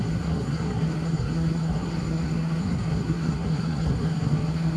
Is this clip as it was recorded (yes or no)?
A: no